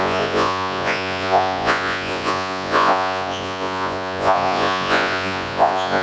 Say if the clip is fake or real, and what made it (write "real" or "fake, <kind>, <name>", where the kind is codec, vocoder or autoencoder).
fake, vocoder, Vocos